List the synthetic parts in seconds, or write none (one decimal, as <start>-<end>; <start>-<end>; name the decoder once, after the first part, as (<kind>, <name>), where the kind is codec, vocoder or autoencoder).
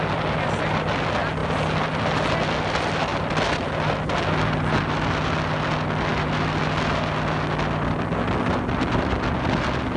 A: none